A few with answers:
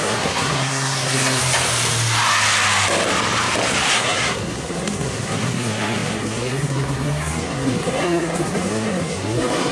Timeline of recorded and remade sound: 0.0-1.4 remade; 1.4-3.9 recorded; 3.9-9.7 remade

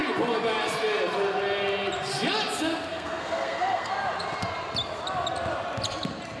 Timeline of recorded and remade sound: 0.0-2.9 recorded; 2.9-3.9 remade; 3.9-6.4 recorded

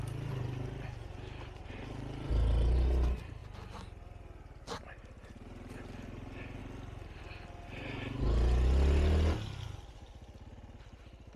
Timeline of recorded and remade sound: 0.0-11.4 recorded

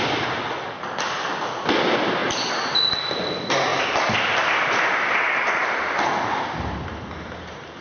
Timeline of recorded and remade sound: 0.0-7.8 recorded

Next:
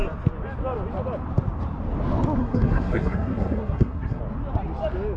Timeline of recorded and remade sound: 0.0-2.4 recorded; 2.4-4.2 remade; 4.2-5.2 recorded

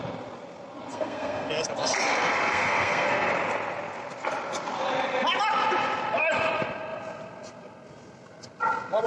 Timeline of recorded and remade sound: 0.0-0.9 recorded; 0.9-1.5 remade; 1.5-2.1 recorded; 2.1-3.3 remade; 3.3-9.1 recorded